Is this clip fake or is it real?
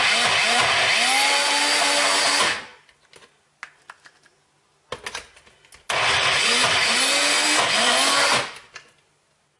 real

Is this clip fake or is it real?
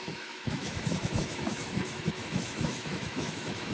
fake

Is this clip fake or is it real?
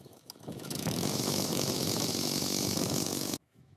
fake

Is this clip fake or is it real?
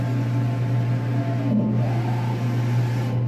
real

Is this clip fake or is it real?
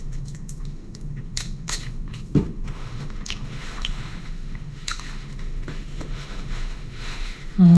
fake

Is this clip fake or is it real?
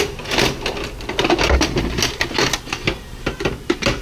real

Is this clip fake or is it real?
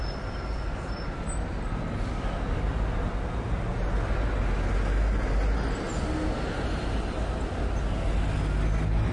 real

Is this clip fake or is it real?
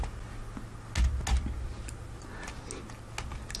real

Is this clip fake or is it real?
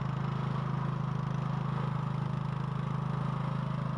real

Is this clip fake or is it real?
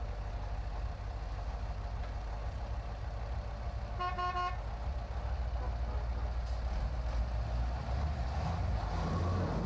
real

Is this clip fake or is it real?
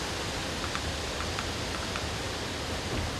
real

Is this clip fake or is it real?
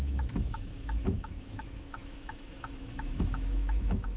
fake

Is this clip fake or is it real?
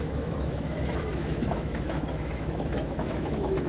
fake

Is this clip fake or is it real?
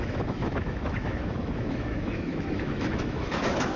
fake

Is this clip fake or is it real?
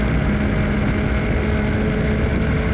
real